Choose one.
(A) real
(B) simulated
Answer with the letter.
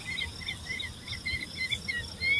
A